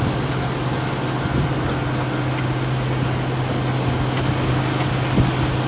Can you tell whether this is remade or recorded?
recorded